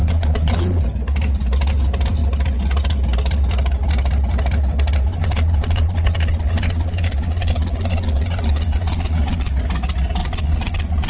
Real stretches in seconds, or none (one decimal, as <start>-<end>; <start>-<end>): 0.8-5.1; 9.5-10.2